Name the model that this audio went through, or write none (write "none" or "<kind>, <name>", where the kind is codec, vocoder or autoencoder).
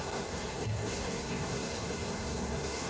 codec, SNAC